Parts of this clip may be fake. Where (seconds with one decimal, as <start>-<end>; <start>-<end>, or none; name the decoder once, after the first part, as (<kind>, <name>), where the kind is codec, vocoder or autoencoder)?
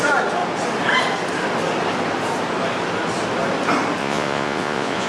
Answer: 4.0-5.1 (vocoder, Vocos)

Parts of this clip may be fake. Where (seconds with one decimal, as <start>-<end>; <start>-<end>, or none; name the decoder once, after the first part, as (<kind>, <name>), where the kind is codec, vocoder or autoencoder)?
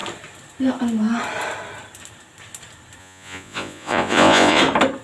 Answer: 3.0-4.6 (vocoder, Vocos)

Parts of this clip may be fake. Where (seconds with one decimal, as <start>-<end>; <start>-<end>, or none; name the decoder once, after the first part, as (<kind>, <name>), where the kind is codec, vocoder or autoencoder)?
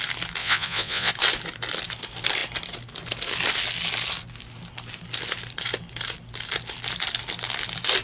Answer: 0.4-1.1 (vocoder, Vocos)